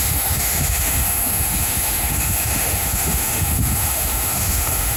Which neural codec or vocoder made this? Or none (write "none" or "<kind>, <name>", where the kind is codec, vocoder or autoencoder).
autoencoder, DAC-VAE